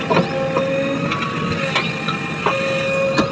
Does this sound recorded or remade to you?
recorded